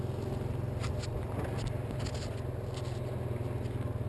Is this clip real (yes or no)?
yes